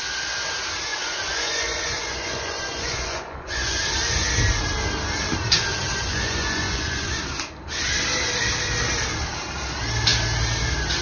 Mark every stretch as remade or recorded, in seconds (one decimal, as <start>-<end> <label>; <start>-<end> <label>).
0.0-0.9 recorded; 0.9-3.8 remade; 3.8-5.9 recorded; 5.9-7.2 remade; 7.2-11.0 recorded